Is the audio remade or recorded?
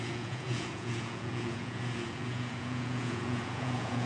remade